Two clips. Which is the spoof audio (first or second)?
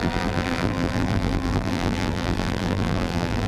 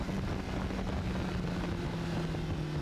first